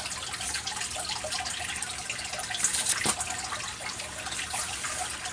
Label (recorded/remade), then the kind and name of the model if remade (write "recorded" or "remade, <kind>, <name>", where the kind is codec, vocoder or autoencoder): recorded